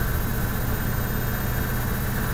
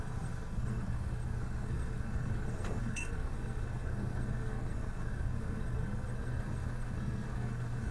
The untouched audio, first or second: first